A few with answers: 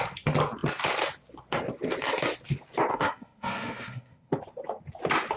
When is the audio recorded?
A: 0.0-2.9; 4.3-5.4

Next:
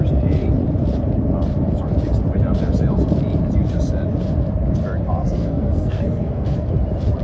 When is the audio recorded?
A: 0.0-5.2; 6.7-7.2

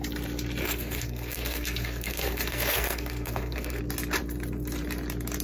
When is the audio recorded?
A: 0.0-0.6; 3.8-5.4

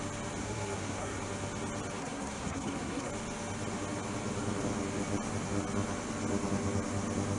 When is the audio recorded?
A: 0.0-0.4; 1.2-2.0; 3.1-7.4

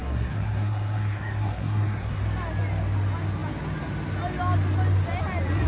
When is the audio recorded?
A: 2.2-5.7

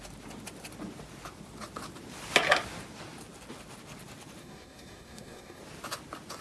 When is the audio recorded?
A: 0.0-4.4; 5.6-6.4

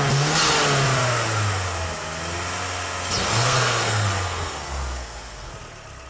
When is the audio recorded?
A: 0.0-3.3; 5.5-6.1